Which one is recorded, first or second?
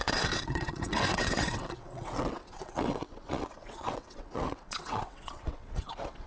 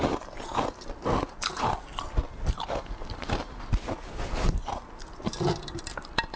second